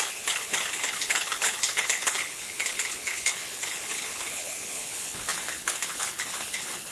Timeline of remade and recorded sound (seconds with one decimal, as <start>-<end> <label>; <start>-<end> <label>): 0.0-6.9 remade